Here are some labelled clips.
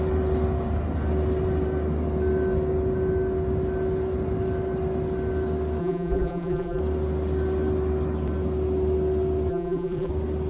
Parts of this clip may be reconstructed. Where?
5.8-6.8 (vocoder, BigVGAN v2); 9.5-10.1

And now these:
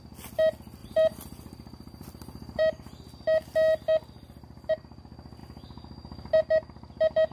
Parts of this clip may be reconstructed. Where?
0.8-2.6 (vocoder, BigVGAN v2)

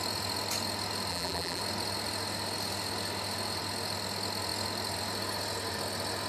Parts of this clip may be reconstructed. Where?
1.1-1.6 (vocoder, BigVGAN v2)

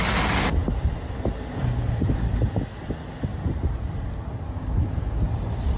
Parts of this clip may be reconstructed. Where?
none